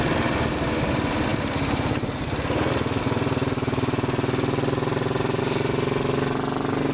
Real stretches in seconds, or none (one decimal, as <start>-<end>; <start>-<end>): 0.0-6.9